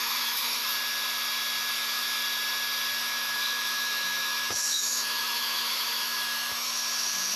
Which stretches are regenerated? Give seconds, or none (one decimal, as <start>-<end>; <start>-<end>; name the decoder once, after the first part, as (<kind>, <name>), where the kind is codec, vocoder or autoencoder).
0.0-0.6 (autoencoder, DAC-VAE); 1.7-2.2; 3.0-7.4